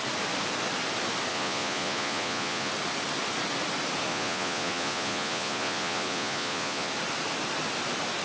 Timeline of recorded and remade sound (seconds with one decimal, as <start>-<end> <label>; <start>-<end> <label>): 0.0-1.3 recorded; 1.3-2.7 remade; 2.7-4.1 recorded; 4.1-6.9 remade; 6.9-8.2 recorded